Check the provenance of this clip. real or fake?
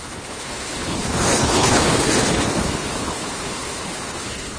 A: fake